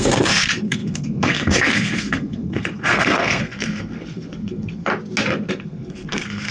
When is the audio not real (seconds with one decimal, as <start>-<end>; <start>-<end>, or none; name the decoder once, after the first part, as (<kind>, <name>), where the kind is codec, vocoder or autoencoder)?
0.0-4.9 (codec, SNAC); 5.5-6.5